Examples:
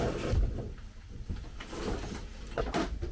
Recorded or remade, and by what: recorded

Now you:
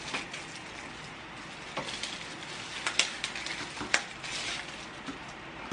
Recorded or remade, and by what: recorded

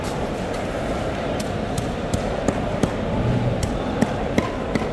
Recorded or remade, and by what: remade, vocoder, BigVGAN v2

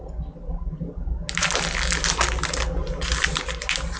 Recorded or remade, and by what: recorded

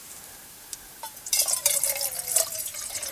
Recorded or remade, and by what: remade, vocoder, BigVGAN v2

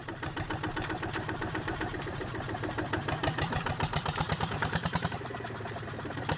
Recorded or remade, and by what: remade, vocoder, BigVGAN v2